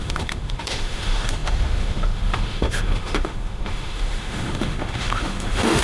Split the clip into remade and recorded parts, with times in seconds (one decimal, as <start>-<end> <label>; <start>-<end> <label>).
0.0-5.8 remade